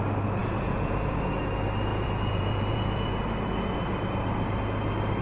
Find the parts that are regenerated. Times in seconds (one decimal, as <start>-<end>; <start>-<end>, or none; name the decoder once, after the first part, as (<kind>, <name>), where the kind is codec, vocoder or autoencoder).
0.4-1.4 (vocoder, Vocos); 1.9-3.2